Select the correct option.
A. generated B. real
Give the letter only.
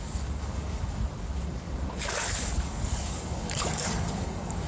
A